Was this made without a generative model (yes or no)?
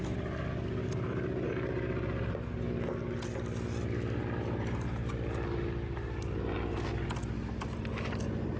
yes